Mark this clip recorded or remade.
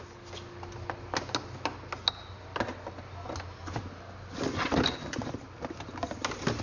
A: recorded